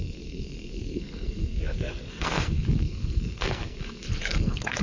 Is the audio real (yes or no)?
no